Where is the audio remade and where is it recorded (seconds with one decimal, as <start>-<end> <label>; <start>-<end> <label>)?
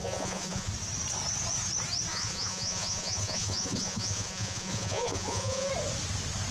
0.0-0.7 remade; 0.7-2.1 recorded; 2.1-5.7 remade; 5.7-6.5 recorded